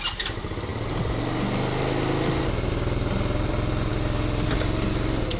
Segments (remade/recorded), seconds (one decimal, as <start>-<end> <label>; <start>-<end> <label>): 0.0-5.4 recorded